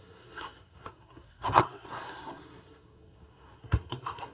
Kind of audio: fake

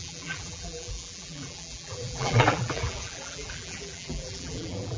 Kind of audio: fake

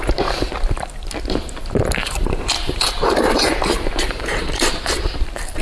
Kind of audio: fake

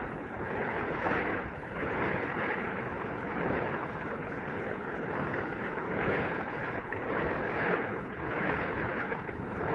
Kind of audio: fake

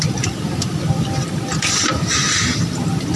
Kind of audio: real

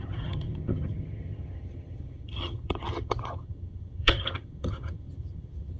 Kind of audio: fake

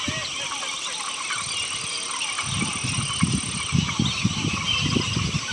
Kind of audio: real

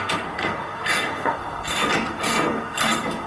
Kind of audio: fake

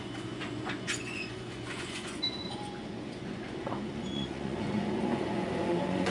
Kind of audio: fake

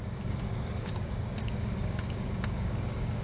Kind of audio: fake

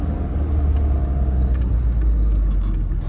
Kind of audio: real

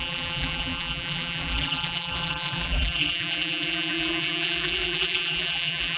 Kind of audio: fake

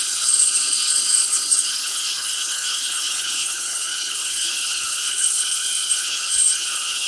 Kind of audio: fake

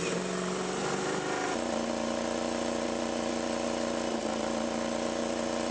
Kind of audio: real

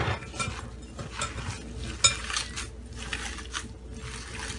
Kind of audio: real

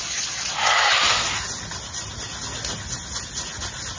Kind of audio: real